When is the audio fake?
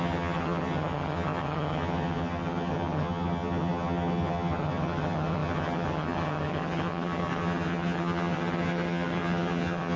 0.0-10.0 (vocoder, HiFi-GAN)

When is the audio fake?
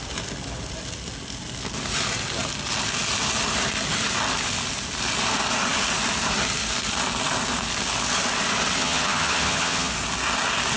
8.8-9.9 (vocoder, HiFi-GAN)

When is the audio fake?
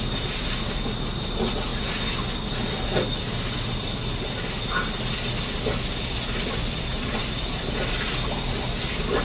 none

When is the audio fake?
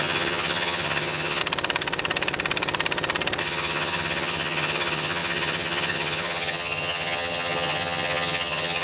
0.0-1.4 (vocoder, HiFi-GAN); 3.4-8.8